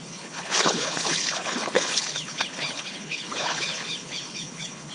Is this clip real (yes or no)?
no